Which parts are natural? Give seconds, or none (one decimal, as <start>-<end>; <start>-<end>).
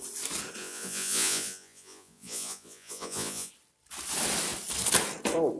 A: 0.0-0.6; 3.5-5.6